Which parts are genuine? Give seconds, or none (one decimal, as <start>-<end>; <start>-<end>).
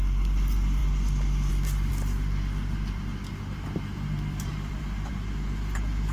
0.0-1.9; 5.1-6.1